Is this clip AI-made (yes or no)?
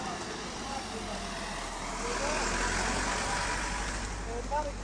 no